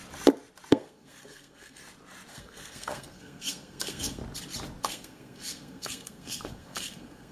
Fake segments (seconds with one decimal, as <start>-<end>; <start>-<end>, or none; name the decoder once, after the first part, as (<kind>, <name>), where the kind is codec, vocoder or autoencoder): 0.7-1.8 (codec, SNAC); 2.3-4.2; 4.8-7.3